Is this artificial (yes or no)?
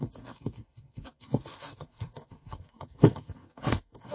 yes